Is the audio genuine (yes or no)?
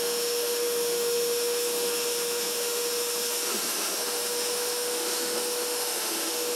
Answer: no